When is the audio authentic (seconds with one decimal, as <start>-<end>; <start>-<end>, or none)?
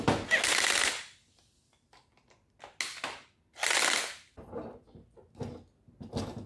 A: 0.0-6.5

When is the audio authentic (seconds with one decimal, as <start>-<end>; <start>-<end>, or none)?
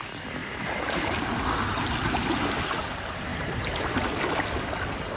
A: 0.0-0.4; 1.1-3.3; 4.1-5.2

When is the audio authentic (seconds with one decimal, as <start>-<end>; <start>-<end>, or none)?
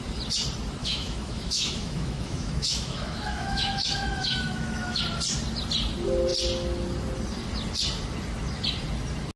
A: 0.0-0.8; 5.0-9.4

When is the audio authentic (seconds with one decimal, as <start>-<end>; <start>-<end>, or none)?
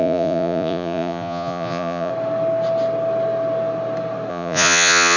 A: 2.1-4.3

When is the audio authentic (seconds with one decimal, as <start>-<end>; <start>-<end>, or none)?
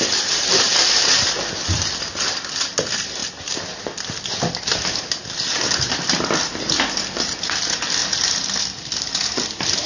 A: 0.0-9.9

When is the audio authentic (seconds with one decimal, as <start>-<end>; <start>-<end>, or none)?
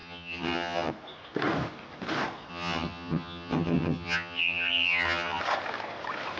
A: 0.9-2.5; 5.4-6.4